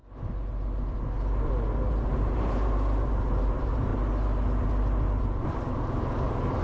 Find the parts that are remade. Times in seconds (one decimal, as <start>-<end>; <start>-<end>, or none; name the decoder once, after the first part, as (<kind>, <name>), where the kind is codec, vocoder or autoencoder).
1.9-3.9 (vocoder, BigVGAN v2); 5.2-6.6